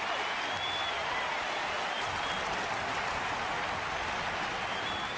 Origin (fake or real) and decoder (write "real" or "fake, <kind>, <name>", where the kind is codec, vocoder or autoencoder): real